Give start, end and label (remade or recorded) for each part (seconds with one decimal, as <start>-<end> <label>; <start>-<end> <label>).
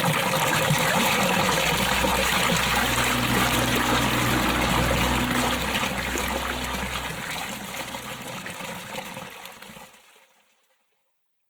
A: 0.0-11.5 recorded